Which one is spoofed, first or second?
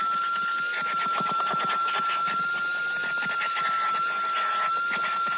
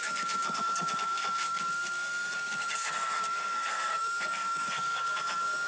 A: second